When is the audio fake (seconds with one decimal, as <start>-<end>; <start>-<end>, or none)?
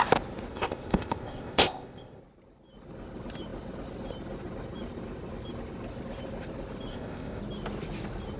0.5-2.2; 6.9-7.4